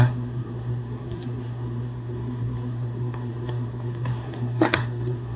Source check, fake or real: fake